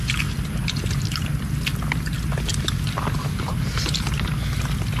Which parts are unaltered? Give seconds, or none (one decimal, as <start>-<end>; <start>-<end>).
0.0-5.0